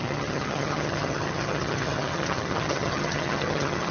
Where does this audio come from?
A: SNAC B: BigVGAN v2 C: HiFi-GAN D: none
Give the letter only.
C